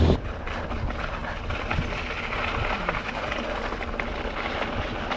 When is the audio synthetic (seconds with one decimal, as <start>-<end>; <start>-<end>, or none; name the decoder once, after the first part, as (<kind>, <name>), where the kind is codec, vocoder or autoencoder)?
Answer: none